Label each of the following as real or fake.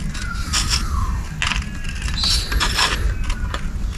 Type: real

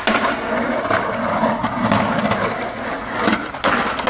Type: real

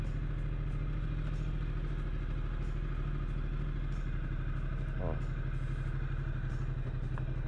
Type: real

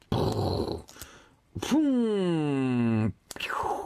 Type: real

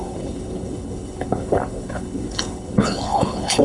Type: fake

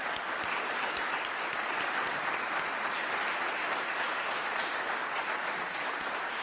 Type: real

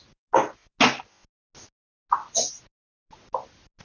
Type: real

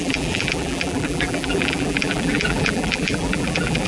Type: fake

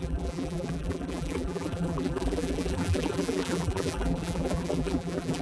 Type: fake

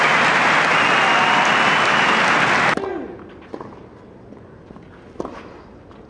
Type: real